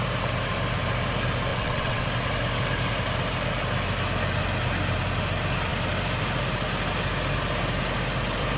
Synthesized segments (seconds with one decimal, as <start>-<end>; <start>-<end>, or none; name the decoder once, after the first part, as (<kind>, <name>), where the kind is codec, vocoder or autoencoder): 1.5-2.0 (vocoder, WaveNeXt)